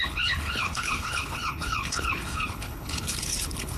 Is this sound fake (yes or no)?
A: yes